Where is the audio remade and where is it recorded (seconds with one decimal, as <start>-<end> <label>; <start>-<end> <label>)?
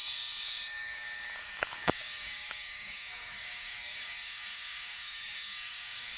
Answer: 0.0-6.2 remade